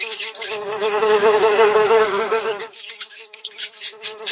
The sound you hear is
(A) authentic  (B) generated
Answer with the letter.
B